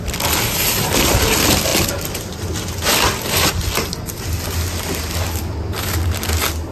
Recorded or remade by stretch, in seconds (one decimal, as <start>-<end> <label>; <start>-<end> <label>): 0.0-6.7 recorded